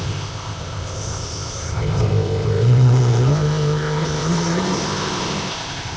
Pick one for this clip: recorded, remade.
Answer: remade